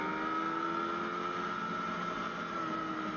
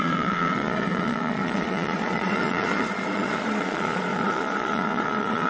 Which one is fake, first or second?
second